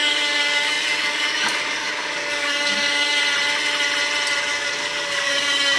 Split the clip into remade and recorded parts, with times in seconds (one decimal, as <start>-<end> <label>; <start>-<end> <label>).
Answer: 0.0-3.2 remade; 3.2-4.5 recorded; 4.5-5.8 remade